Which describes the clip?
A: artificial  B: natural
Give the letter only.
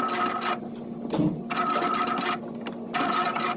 B